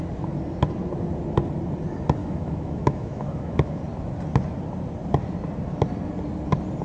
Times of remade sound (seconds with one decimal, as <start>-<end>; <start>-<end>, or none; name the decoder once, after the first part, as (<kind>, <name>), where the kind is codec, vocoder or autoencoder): 2.2-3.8 (autoencoder, DAC-VAE)